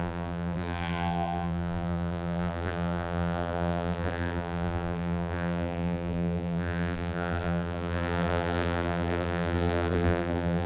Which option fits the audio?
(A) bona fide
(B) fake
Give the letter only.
B